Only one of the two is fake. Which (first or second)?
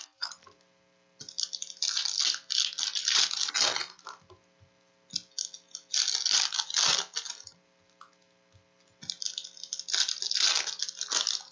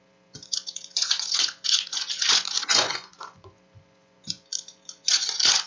second